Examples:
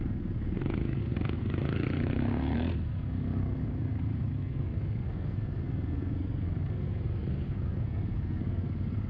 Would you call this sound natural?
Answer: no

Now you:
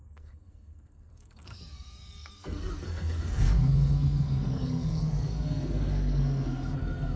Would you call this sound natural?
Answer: no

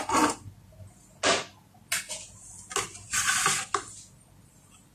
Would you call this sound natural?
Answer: yes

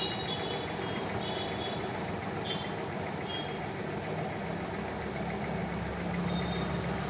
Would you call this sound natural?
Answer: yes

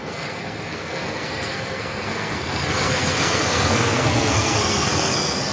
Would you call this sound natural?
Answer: no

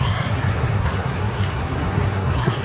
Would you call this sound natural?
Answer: no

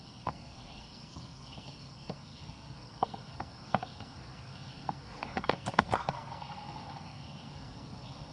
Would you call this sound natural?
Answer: no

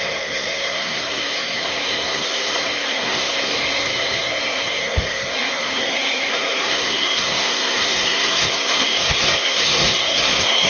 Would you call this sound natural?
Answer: no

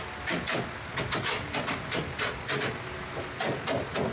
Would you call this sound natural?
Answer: yes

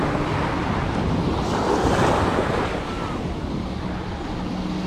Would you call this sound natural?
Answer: yes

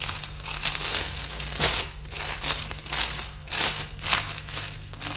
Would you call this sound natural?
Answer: no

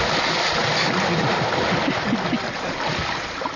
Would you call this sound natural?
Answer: yes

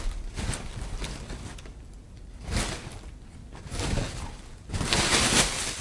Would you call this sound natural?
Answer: yes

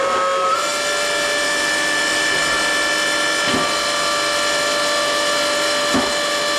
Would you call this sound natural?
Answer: yes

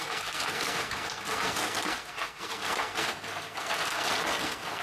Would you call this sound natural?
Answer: no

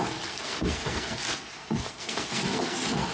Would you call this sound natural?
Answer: no